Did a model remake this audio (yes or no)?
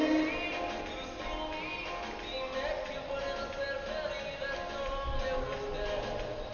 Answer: no